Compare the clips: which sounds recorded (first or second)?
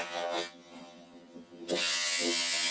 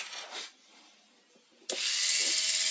second